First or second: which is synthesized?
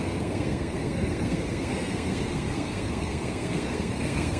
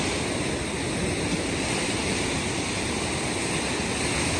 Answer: first